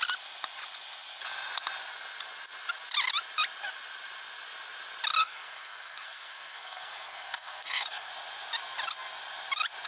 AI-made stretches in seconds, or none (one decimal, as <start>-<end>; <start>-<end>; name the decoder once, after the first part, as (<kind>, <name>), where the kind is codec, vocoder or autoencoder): 5.2-8.1 (codec, SNAC)